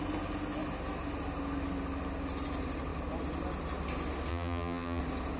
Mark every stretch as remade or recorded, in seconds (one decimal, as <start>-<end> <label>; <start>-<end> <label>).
0.0-4.3 recorded; 4.3-5.0 remade; 5.0-5.4 recorded